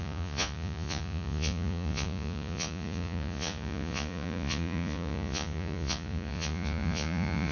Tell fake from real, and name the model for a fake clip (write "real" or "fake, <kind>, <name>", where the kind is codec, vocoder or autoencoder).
fake, vocoder, Vocos